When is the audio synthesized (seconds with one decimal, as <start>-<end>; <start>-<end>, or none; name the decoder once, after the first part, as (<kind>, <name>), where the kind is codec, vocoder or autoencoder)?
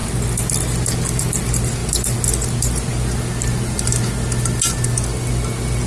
none